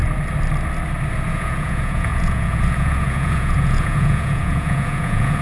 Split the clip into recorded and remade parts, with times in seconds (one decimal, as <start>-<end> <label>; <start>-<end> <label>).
0.0-1.3 recorded; 1.3-5.4 remade